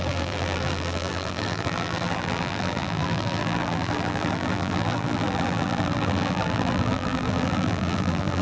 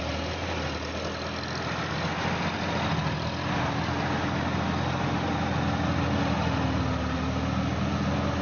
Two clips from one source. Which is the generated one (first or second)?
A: first